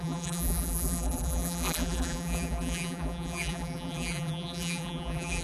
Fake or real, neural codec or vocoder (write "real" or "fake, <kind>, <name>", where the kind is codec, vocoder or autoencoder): fake, vocoder, BigVGAN v2